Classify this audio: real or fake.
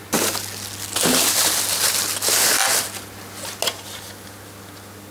real